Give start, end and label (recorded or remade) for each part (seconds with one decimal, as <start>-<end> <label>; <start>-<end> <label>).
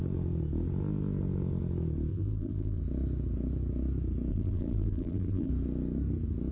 0.0-2.1 recorded; 2.1-2.8 remade; 2.8-4.3 recorded; 4.3-5.5 remade; 5.5-6.5 recorded